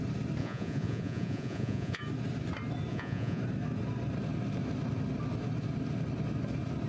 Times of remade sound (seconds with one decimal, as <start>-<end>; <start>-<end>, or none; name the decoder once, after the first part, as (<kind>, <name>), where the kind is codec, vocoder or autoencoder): 0.4-2.0 (vocoder, Vocos); 2.9-3.4